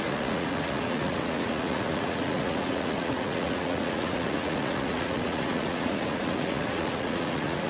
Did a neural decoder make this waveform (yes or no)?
yes